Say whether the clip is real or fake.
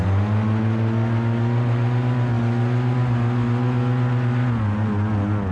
real